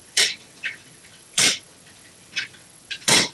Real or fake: fake